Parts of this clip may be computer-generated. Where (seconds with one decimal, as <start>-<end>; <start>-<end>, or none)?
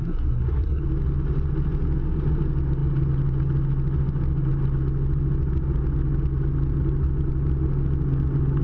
0.0-0.8